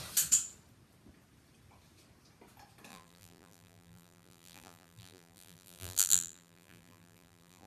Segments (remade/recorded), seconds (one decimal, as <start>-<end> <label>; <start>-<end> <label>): 0.0-2.9 recorded; 2.9-7.7 remade